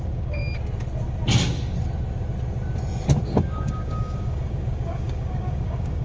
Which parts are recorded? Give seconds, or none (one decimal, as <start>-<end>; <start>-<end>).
0.4-3.3